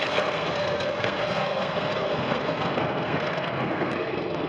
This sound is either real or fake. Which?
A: fake